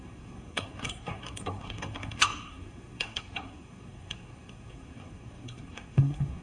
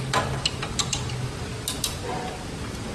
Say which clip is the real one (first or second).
second